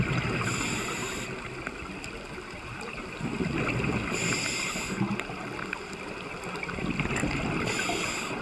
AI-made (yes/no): no